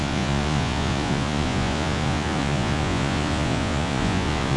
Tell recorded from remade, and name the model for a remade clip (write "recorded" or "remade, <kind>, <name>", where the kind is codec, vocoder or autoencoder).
remade, vocoder, Vocos